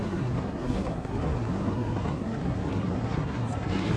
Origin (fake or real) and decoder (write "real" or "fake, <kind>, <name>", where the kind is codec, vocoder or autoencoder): fake, codec, SNAC